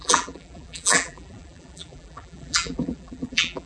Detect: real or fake fake